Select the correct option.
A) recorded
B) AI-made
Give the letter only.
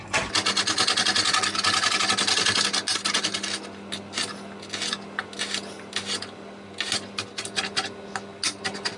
A